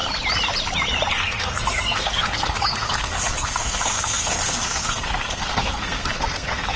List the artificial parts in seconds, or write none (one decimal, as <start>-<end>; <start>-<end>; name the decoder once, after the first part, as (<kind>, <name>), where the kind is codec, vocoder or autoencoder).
1.1-6.8 (codec, SNAC)